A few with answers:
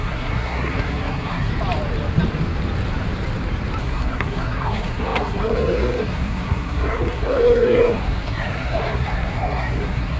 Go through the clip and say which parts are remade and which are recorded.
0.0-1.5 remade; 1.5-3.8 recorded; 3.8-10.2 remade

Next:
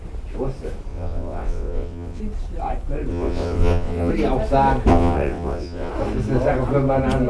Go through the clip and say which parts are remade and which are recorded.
0.0-0.9 recorded; 0.9-2.2 remade; 2.2-3.1 recorded; 3.1-4.1 remade; 4.1-4.9 recorded; 4.9-5.9 remade; 5.9-7.3 recorded